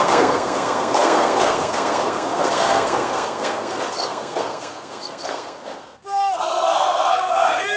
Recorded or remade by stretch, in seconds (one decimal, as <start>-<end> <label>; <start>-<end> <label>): 0.0-7.8 remade